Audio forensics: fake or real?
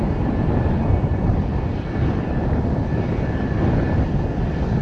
real